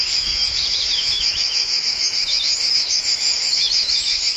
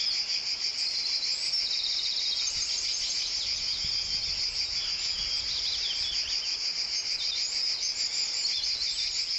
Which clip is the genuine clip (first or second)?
second